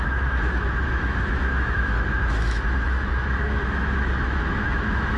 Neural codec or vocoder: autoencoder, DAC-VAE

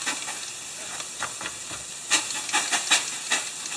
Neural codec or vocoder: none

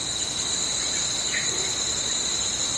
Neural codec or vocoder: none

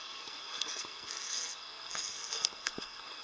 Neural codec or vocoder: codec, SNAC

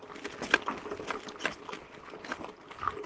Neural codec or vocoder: none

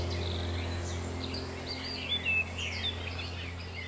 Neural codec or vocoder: none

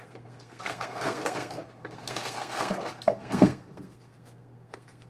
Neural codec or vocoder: codec, SNAC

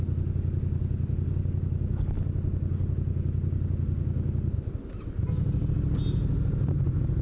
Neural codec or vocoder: none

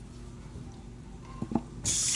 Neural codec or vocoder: none